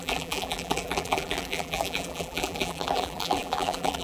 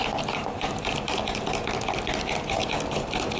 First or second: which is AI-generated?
first